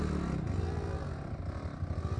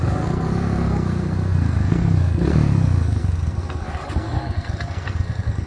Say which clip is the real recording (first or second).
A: first